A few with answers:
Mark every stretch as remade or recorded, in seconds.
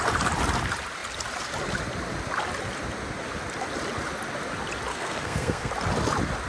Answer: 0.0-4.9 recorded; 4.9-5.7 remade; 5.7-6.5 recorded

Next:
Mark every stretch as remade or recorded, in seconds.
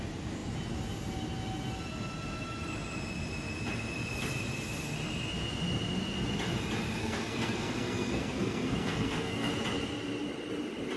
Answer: 0.0-7.0 recorded; 7.0-9.5 remade; 9.5-11.0 recorded